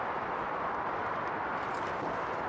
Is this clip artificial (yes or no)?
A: no